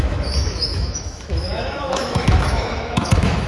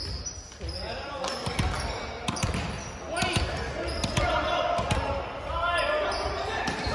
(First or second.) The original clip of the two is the second